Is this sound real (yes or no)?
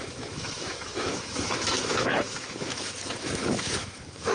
no